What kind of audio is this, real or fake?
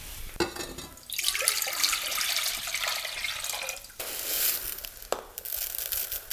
real